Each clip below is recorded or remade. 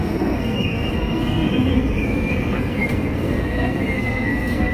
remade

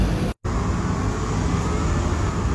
recorded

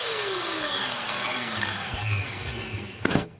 remade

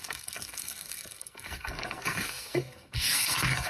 remade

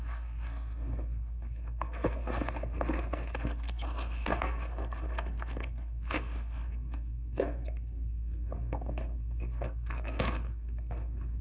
remade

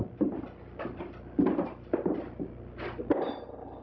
recorded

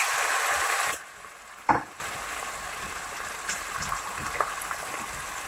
recorded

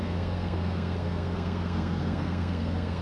remade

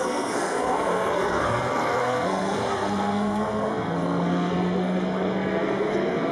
remade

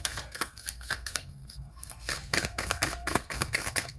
remade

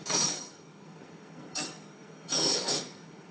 remade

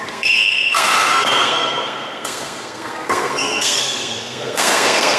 remade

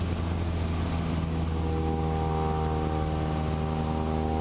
recorded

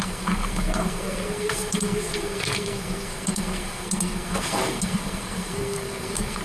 remade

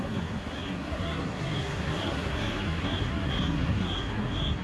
remade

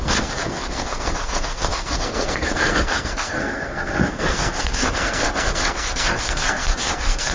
remade